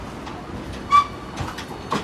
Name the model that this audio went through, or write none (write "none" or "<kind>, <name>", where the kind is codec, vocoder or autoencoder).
none